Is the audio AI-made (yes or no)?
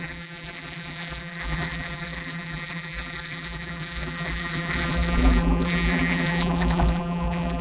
yes